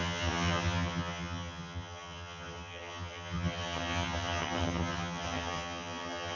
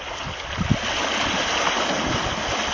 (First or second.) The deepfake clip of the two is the first